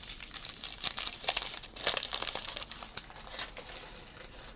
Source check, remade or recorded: recorded